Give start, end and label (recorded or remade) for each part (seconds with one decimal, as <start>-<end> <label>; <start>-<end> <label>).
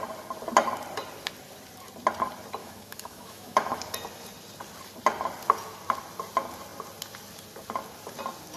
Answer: 0.0-2.6 recorded; 2.6-3.8 remade; 3.8-8.6 recorded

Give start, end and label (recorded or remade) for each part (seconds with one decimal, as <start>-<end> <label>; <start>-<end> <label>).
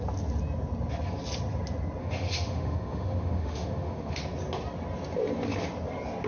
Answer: 0.0-2.0 recorded; 2.0-4.2 remade; 4.2-6.3 recorded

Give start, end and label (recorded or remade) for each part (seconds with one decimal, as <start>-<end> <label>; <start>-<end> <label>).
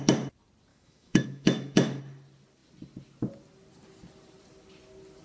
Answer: 0.0-0.7 recorded; 0.7-2.0 remade; 2.0-5.2 recorded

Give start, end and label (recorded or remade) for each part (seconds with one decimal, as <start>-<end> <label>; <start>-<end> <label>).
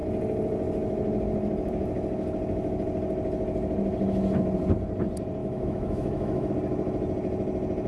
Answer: 0.0-5.4 recorded; 5.4-6.5 remade; 6.5-7.9 recorded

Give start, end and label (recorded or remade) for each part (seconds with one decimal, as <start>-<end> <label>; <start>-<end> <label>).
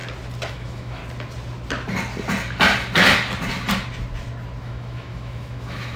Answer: 0.0-0.5 recorded; 0.5-1.0 remade; 1.0-4.6 recorded; 4.6-6.0 remade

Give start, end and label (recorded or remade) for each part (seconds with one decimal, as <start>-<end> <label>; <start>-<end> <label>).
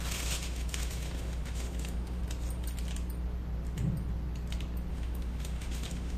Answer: 0.0-2.2 remade; 2.2-4.9 recorded; 4.9-6.2 remade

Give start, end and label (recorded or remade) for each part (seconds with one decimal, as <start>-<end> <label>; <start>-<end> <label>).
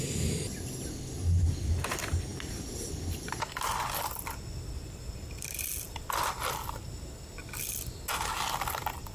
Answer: 0.0-9.1 recorded